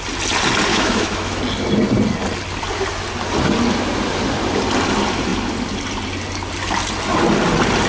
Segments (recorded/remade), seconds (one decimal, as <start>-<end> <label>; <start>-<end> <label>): 0.0-0.7 recorded; 0.7-1.4 remade; 1.4-7.9 recorded